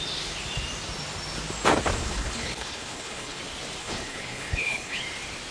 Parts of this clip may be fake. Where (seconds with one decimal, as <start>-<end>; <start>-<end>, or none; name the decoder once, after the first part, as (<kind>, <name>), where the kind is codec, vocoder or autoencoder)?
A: 2.0-3.4 (codec, HILCodec); 3.8-5.0